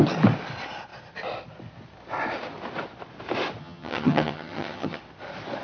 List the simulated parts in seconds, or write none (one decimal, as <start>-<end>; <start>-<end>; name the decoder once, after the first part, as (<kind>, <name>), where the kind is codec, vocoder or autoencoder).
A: 3.6-5.0 (vocoder, HiFi-GAN)